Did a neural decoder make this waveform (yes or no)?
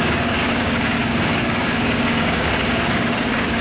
yes